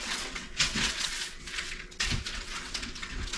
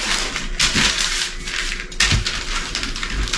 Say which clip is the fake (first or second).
first